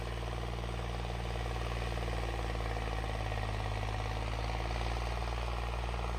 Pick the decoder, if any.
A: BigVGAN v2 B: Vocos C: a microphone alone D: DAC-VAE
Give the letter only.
C